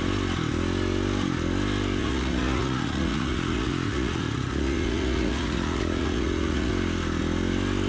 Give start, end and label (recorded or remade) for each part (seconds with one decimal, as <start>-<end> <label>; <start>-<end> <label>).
0.0-2.0 recorded; 2.0-6.7 remade; 6.7-7.9 recorded